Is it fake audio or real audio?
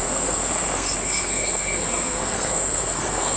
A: fake